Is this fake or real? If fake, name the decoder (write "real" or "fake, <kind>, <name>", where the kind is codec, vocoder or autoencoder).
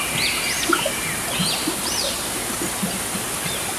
real